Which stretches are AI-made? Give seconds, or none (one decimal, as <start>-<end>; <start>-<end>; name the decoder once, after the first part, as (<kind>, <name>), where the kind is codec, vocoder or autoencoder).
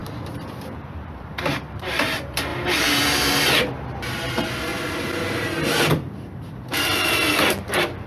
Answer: 0.0-1.9 (vocoder, BigVGAN v2); 2.5-3.1; 4.7-5.6